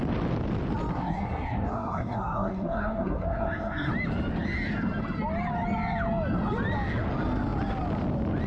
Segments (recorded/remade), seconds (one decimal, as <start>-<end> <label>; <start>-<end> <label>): 0.0-0.9 recorded; 0.9-3.9 remade; 3.9-8.5 recorded